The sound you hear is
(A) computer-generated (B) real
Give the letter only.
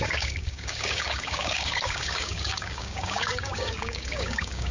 A